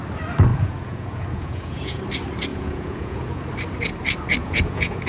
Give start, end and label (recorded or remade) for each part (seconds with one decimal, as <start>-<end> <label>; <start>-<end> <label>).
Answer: 0.0-0.5 recorded; 0.5-2.0 remade; 2.0-2.5 recorded; 2.5-3.4 remade; 3.4-4.4 recorded; 4.4-5.1 remade